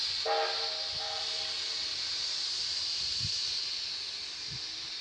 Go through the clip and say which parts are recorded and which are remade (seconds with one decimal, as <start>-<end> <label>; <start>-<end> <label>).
0.0-1.8 recorded; 1.8-3.5 remade; 3.5-5.0 recorded